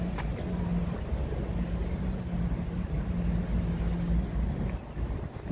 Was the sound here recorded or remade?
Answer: recorded